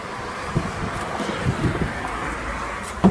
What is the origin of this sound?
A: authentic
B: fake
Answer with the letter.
A